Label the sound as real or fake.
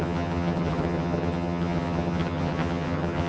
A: fake